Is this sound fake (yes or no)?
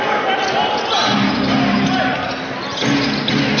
no